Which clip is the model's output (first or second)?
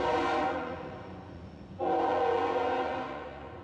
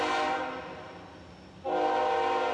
first